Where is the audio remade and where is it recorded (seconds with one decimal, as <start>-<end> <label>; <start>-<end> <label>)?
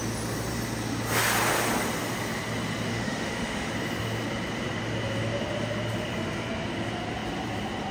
0.0-2.9 recorded; 2.9-3.7 remade; 3.7-7.9 recorded